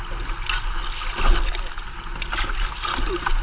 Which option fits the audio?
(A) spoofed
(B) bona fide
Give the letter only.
B